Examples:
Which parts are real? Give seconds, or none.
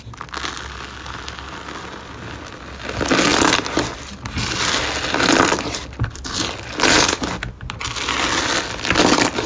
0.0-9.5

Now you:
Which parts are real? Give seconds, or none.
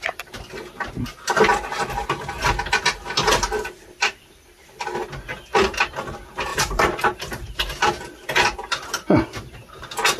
0.0-6.5; 7.6-10.2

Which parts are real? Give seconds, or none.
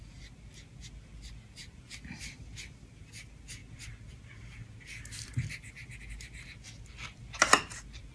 0.0-8.1